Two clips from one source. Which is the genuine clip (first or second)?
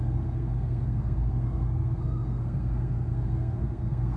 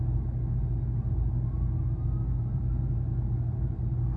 second